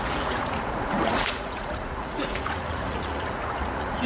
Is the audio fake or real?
fake